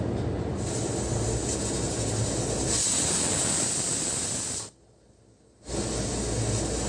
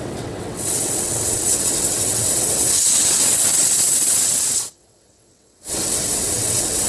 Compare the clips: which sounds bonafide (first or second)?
first